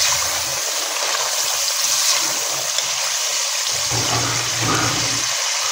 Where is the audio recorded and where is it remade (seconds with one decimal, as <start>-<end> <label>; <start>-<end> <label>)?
0.0-5.7 recorded